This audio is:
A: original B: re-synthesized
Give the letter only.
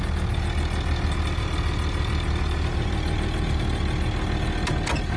A